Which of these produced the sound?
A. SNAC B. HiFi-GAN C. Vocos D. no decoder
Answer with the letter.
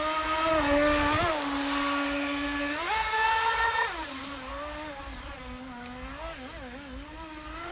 D